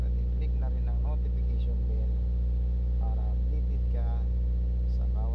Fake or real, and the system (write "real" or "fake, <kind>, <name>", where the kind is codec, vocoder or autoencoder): real